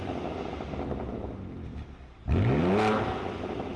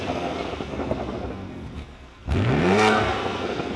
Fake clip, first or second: second